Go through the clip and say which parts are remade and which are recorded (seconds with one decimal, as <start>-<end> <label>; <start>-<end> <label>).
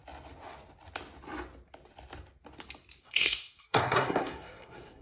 0.0-3.0 recorded; 3.0-5.0 remade